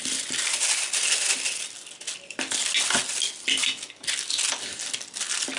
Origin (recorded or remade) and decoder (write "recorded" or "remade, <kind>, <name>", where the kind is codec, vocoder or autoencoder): recorded